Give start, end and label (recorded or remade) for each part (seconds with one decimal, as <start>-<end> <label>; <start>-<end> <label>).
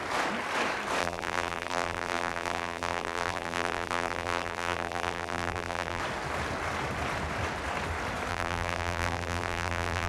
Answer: 0.0-1.0 recorded; 1.0-6.0 remade; 6.0-8.3 recorded; 8.3-10.1 remade